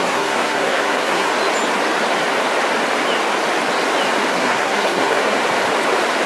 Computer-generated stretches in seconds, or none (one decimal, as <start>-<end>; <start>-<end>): 0.0-1.3; 4.3-5.4